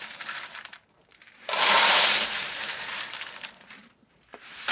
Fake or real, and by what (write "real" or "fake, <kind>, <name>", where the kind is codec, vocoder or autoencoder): fake, vocoder, BigVGAN v2